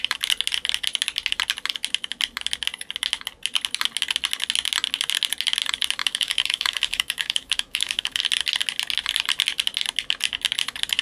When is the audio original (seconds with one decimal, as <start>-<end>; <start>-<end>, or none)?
0.0-6.0; 8.2-11.0